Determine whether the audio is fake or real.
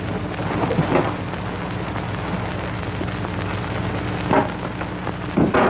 real